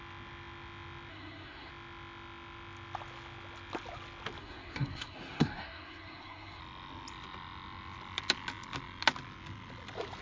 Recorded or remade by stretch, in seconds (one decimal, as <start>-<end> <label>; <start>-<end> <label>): 0.0-1.1 recorded; 1.1-1.7 remade; 1.7-4.4 recorded; 4.4-6.6 remade; 6.6-10.2 recorded